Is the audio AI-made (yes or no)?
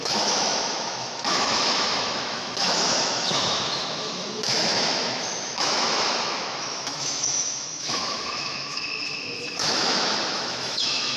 yes